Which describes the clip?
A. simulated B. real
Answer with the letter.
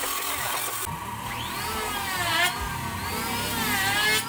B